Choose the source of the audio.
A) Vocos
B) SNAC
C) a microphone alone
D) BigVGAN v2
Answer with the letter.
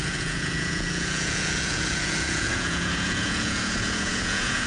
A